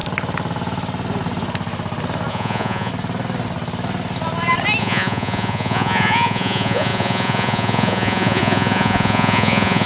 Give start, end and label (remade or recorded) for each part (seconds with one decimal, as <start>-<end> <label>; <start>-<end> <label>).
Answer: 0.0-2.3 recorded; 2.3-2.9 remade; 2.9-4.8 recorded; 4.8-9.9 remade